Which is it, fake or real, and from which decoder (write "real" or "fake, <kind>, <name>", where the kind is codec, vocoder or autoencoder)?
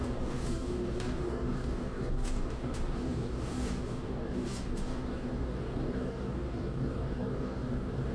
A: fake, codec, DAC